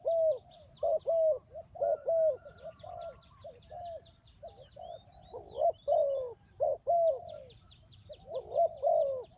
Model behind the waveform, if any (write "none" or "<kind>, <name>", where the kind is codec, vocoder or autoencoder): none